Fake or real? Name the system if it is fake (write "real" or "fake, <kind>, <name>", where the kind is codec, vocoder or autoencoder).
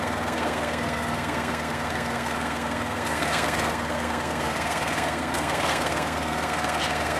fake, codec, SNAC